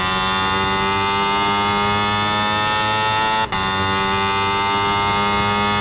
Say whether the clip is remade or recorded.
recorded